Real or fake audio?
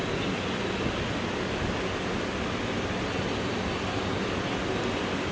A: real